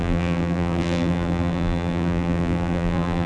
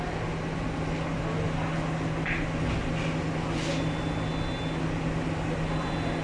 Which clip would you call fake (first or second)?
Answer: first